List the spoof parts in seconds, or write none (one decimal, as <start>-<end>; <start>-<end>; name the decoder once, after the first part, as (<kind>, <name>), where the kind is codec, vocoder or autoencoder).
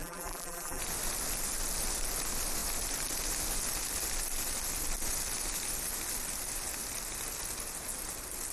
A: 0.0-0.8 (vocoder, BigVGAN v2)